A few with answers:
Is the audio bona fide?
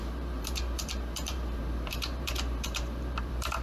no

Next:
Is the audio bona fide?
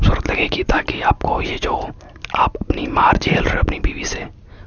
yes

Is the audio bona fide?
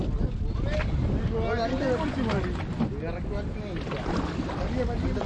yes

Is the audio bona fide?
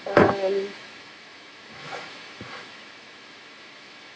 no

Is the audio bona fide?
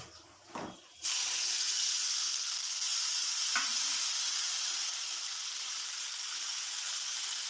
yes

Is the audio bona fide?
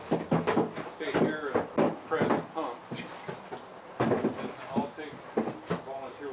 yes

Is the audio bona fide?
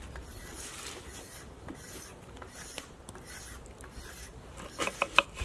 yes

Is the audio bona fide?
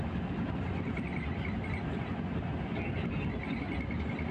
yes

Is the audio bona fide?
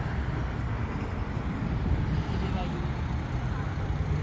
yes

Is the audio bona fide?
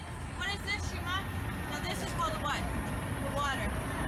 yes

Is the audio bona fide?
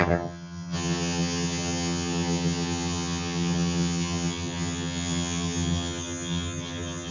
no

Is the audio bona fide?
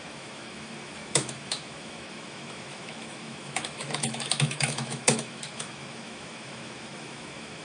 no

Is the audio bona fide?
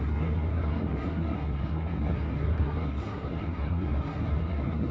no